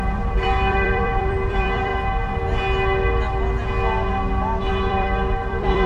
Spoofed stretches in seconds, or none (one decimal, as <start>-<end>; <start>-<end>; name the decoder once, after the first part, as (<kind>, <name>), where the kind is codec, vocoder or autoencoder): 0.0-1.9 (vocoder, BigVGAN v2); 4.7-5.9